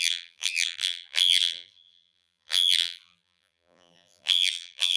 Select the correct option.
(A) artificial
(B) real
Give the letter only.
A